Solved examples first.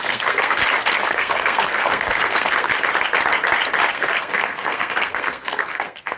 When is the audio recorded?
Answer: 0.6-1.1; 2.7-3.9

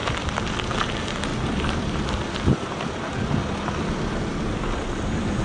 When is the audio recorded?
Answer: 0.0-1.3; 4.3-5.4

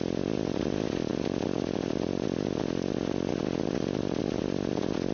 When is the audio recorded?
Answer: 0.0-5.1

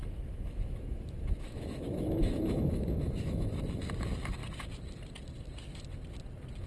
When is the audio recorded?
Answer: 3.6-6.7

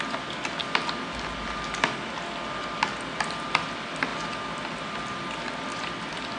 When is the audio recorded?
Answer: 0.0-6.4